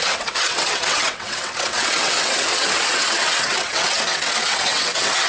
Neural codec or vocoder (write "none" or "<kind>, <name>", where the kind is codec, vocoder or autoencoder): vocoder, WaveNeXt